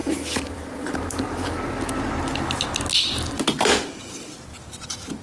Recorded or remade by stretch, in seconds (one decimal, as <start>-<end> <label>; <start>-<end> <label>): 0.0-1.7 remade; 1.7-5.2 recorded